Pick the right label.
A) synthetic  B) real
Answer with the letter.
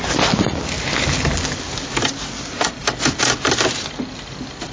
B